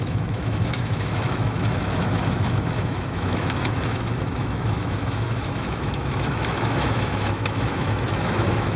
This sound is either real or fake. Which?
fake